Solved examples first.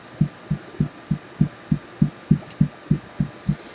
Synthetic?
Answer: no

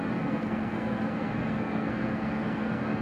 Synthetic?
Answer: yes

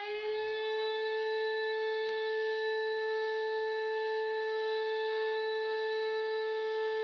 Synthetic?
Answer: yes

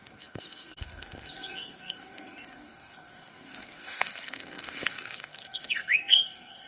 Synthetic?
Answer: yes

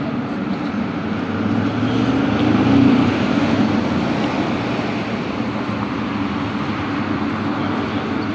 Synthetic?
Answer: no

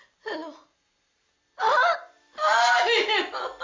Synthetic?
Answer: no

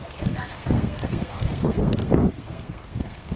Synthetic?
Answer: yes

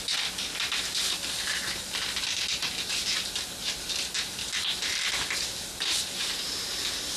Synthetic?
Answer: no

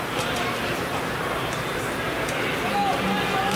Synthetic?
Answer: no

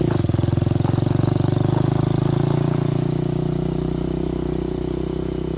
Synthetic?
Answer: no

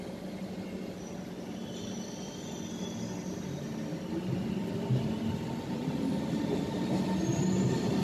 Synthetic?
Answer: no